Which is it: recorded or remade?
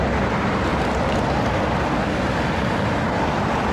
recorded